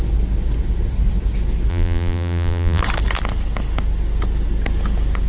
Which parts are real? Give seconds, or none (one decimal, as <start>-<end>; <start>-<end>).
0.0-1.7; 2.8-5.3